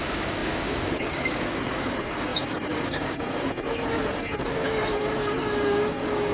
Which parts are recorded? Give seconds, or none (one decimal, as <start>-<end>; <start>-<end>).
none